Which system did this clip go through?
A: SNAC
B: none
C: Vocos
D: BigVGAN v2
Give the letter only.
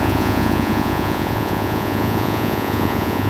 C